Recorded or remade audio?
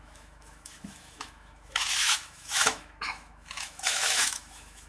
remade